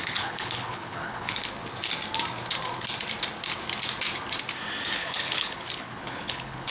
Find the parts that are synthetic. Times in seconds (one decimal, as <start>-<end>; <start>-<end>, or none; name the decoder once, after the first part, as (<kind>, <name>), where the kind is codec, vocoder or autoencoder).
0.0-1.4 (codec, HILCodec); 5.0-6.7

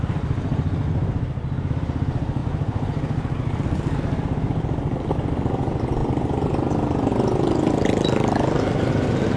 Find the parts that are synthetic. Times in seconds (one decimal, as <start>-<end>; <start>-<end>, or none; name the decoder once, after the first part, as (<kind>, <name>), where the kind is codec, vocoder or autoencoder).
6.0-6.5 (vocoder, BigVGAN v2); 7.1-7.7

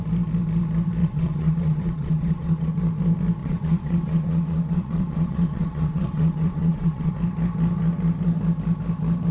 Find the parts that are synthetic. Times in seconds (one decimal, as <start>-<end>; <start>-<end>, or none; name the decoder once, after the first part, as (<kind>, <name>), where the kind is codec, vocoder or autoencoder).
1.0-2.7 (vocoder, WaveNeXt); 3.4-7.1

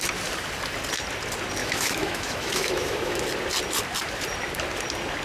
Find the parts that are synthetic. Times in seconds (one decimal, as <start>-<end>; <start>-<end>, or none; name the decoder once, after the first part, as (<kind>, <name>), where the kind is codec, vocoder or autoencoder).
1.6-3.2 (autoencoder, DAC-VAE)

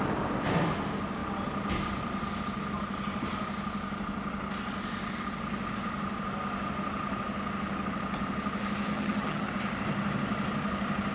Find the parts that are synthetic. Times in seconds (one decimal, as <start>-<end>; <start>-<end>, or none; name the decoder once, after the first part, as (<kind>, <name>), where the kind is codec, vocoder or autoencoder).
8.9-9.5 (vocoder, HiFi-GAN)